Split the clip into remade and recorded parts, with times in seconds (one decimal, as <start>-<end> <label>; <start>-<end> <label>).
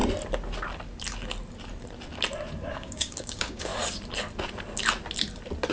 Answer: 0.0-2.7 recorded; 2.7-3.7 remade; 3.7-5.7 recorded